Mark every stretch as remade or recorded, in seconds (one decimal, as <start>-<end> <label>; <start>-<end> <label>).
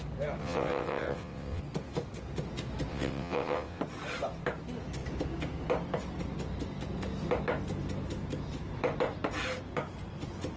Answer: 0.0-0.4 recorded; 0.4-1.6 remade; 1.6-2.9 recorded; 2.9-3.8 remade; 3.8-10.6 recorded